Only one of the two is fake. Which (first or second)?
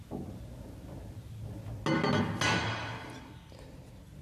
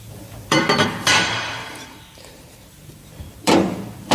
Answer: second